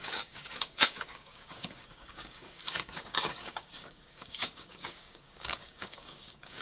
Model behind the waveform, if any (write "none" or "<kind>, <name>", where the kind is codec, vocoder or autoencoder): codec, DAC